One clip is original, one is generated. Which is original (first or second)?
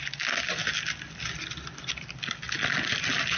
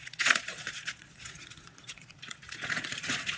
first